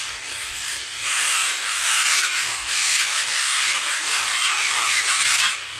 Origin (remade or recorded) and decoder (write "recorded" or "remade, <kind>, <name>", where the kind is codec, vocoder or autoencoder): remade, codec, DAC